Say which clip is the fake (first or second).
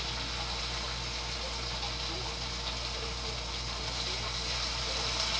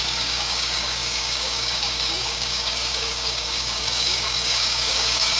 second